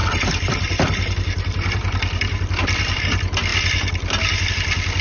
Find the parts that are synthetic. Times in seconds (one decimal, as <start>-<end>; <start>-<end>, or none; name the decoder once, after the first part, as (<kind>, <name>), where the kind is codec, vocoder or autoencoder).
0.0-3.5 (vocoder, BigVGAN v2); 4.5-5.0

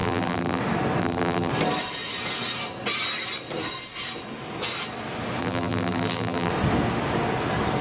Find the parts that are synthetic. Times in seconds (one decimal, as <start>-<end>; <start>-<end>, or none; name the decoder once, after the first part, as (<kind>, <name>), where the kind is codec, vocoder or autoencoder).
0.0-0.6 (vocoder, BigVGAN v2); 1.0-1.5; 5.4-6.5

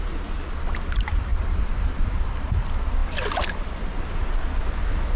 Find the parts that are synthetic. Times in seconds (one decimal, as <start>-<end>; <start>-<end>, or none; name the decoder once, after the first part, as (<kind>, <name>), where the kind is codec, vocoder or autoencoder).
1.3-2.6 (vocoder, BigVGAN v2)

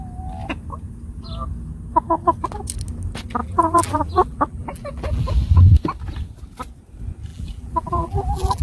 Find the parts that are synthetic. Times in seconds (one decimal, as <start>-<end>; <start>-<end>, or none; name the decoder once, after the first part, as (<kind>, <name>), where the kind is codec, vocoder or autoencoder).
3.4-5.3 (vocoder, BigVGAN v2); 7.3-8.6

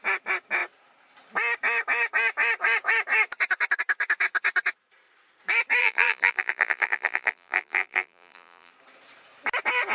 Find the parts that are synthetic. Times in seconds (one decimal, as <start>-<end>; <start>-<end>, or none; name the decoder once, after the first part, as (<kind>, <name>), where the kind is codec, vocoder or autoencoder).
5.8-8.7 (vocoder, BigVGAN v2)

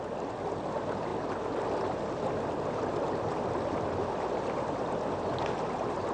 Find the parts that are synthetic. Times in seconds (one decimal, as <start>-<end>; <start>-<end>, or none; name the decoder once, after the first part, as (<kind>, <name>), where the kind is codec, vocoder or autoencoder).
1.1-4.8 (vocoder, BigVGAN v2)